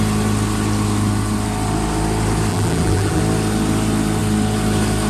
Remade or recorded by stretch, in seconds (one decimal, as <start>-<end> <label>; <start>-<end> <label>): 0.0-2.5 recorded; 2.5-3.2 remade; 3.2-5.1 recorded